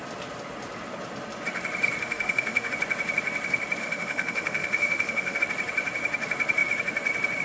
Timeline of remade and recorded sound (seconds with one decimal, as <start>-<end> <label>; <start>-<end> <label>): 0.0-2.0 recorded; 2.0-2.7 remade; 2.7-3.8 recorded; 3.8-5.4 remade; 5.4-7.4 recorded